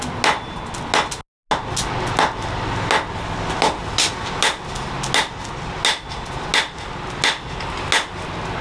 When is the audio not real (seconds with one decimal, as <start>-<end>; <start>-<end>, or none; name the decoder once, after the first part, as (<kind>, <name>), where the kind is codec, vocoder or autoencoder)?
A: none